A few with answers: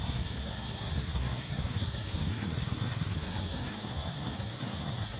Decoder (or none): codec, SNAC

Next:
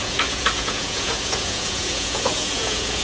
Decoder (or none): vocoder, Vocos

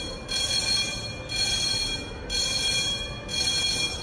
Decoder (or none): none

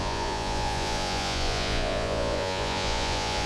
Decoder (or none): vocoder, Vocos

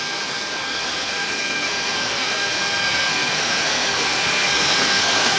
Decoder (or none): codec, SNAC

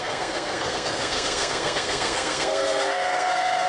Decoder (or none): codec, SNAC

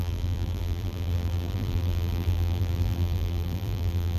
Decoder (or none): vocoder, BigVGAN v2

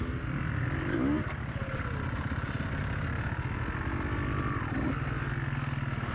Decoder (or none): none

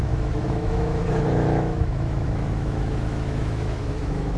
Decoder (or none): autoencoder, DAC-VAE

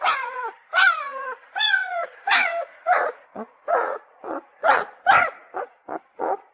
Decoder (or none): vocoder, Vocos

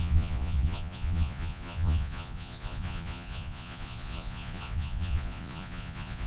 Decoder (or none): vocoder, Vocos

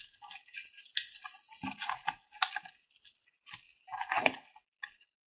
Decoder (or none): none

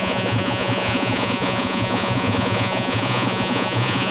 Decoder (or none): vocoder, Vocos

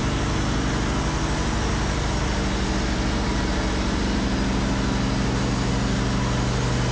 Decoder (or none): none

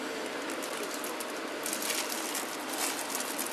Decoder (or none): none